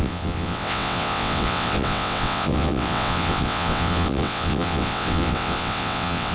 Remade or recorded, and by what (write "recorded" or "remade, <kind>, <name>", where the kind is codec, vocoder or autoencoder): remade, vocoder, WaveNeXt